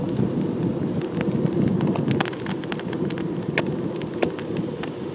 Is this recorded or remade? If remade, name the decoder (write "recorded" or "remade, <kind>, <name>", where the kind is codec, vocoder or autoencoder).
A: recorded